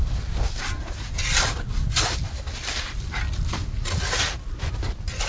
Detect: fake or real real